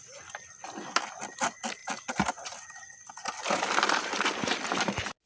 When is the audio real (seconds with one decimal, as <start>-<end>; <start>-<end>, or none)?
0.0-5.3